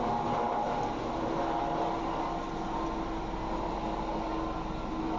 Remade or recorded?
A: recorded